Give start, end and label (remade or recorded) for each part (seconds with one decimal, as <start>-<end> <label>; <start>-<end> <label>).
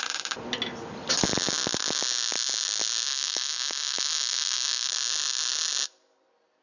0.0-3.1 recorded; 3.1-4.9 remade; 4.9-6.6 recorded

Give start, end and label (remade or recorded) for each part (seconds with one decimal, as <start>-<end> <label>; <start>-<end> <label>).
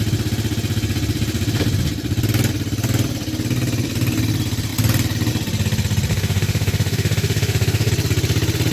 0.0-6.1 recorded; 6.1-7.9 remade; 7.9-8.7 recorded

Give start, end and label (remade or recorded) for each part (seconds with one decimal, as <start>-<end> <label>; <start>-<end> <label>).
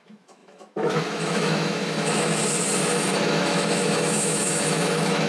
0.0-2.4 remade; 2.4-3.2 recorded; 3.2-5.3 remade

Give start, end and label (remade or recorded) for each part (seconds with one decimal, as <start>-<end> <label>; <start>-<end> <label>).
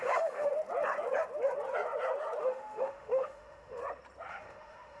0.0-0.5 remade; 0.5-2.4 recorded; 2.4-3.8 remade; 3.8-4.3 recorded; 4.3-5.0 remade